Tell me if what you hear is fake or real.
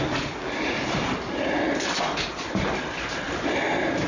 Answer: real